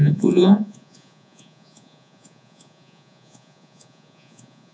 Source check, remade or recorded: remade